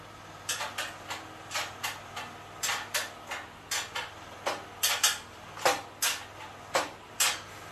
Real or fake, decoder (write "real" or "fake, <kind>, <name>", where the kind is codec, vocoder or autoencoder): real